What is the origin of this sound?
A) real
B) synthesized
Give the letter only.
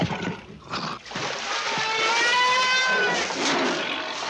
A